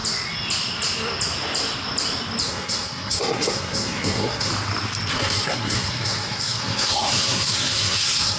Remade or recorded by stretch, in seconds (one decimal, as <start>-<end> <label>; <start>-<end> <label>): 0.0-2.4 recorded; 2.4-4.5 remade; 4.5-5.1 recorded; 5.1-8.4 remade